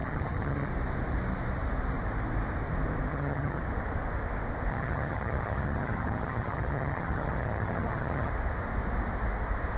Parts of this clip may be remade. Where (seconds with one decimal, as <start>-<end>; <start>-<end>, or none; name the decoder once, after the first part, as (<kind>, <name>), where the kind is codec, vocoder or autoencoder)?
0.0-0.7 (vocoder, HiFi-GAN); 3.1-3.6; 4.7-8.3